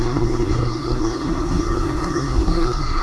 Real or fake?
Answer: fake